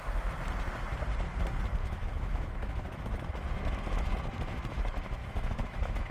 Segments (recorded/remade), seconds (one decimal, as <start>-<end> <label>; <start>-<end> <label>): 0.0-1.8 recorded; 1.8-3.3 remade; 3.3-5.2 recorded; 5.2-6.1 remade